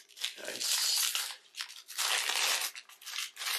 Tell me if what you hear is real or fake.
real